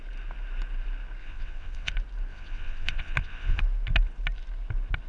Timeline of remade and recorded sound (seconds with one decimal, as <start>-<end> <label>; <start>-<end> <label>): 0.0-1.2 recorded; 1.2-1.9 remade; 1.9-2.3 recorded; 2.3-3.6 remade; 3.6-5.1 recorded